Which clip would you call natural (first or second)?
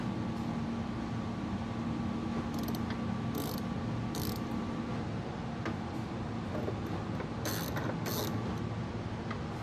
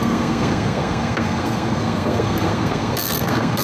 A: first